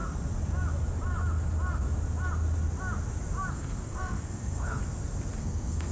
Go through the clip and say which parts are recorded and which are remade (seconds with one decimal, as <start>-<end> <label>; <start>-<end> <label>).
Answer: 0.0-3.5 recorded; 3.5-4.8 remade; 4.8-5.4 recorded; 5.4-5.9 remade